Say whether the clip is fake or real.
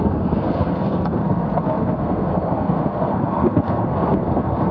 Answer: fake